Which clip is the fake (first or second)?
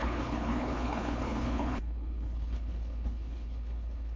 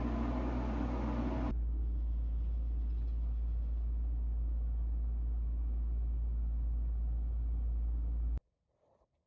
first